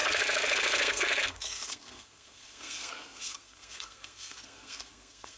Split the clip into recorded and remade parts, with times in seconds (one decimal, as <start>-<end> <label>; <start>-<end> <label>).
0.0-5.4 remade